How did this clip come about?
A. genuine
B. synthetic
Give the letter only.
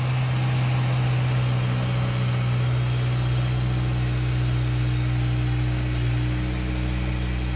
A